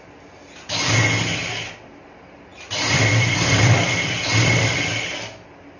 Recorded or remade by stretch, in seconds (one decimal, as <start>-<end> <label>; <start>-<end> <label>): 0.0-2.5 recorded; 2.5-5.0 remade; 5.0-5.8 recorded